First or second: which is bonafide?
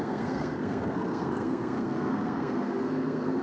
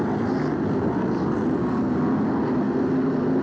second